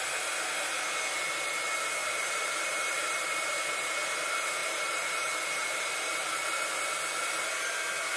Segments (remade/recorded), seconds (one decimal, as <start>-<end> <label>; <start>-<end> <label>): 0.0-2.0 recorded; 2.0-3.6 remade; 3.6-4.6 recorded; 4.6-5.9 remade; 5.9-8.2 recorded